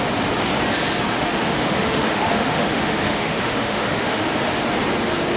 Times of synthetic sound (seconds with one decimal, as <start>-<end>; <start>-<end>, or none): 1.1-4.3